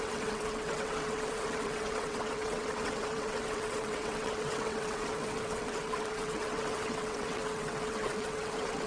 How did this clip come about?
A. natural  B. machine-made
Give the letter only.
B